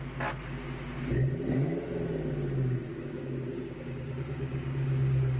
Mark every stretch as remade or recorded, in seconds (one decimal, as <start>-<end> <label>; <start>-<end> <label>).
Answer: 0.0-2.9 recorded; 2.9-5.4 remade